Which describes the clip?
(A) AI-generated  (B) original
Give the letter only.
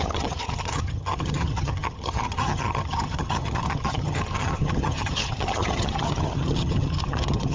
A